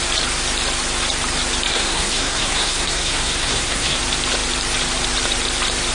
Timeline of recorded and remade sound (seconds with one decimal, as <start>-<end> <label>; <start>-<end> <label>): 0.0-1.7 recorded; 1.7-4.0 remade; 4.0-5.9 recorded